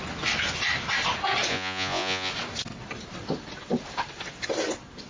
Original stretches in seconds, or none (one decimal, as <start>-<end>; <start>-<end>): 0.0-1.5; 2.3-5.1

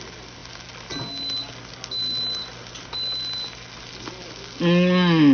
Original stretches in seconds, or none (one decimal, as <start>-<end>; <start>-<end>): 0.0-5.3